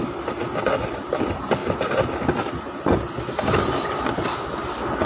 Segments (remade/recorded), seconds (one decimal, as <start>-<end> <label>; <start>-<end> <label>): 0.0-5.1 recorded